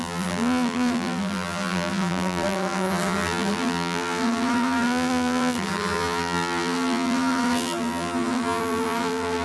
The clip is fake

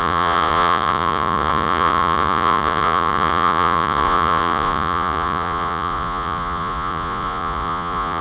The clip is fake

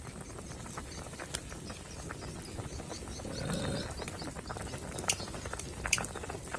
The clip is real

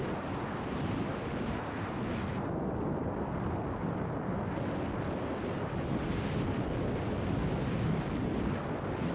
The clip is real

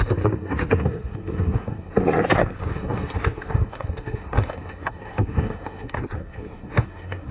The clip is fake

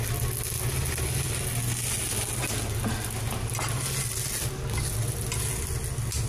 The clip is real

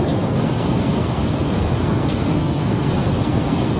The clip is fake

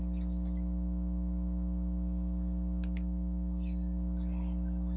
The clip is real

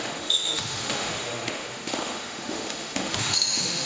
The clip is fake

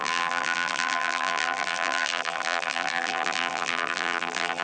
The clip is fake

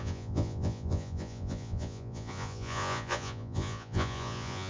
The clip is fake